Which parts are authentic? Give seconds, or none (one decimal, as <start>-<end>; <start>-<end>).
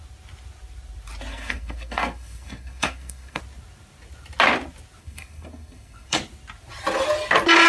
0.0-1.3; 3.4-5.0; 6.2-7.7